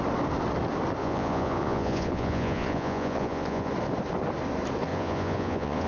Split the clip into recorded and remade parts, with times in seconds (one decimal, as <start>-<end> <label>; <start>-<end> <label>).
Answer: 0.0-1.0 recorded; 1.0-3.7 remade; 3.7-4.9 recorded; 4.9-5.9 remade